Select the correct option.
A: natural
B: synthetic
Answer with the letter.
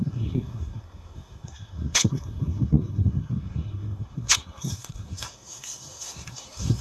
B